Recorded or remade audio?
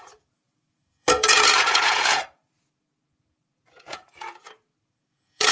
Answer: remade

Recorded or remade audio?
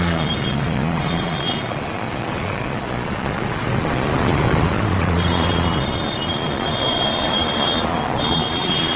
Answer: remade